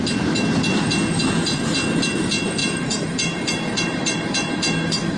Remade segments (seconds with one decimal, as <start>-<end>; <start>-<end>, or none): 2.6-5.2